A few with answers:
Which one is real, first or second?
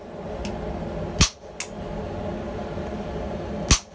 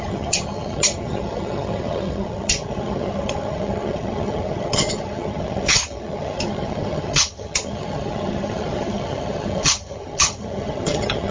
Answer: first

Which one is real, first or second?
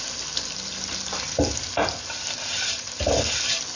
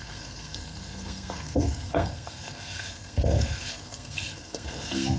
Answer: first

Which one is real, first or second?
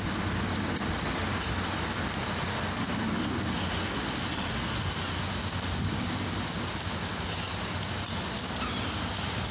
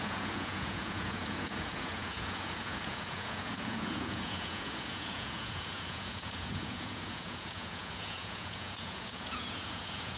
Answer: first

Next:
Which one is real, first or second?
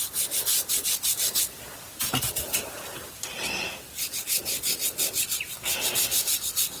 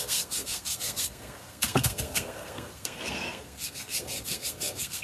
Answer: first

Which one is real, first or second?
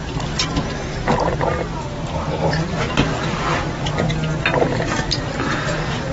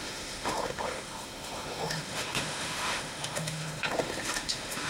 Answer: first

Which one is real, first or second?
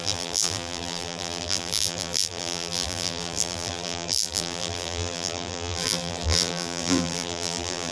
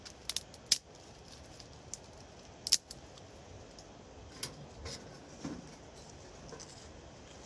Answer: second